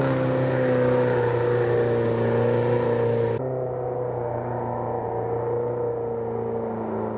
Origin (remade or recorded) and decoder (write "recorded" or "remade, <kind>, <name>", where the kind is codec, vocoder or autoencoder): recorded